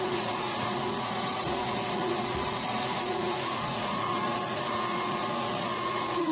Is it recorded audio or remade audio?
remade